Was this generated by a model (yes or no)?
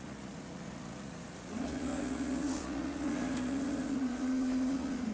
yes